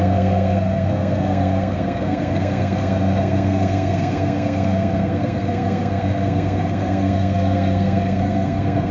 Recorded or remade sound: remade